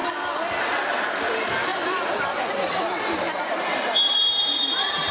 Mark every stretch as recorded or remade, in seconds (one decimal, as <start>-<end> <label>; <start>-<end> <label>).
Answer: 0.0-1.7 recorded; 1.7-3.6 remade; 3.6-5.1 recorded